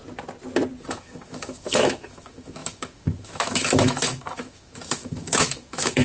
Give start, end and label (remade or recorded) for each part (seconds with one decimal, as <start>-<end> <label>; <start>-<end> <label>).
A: 0.0-0.9 recorded; 0.9-6.0 remade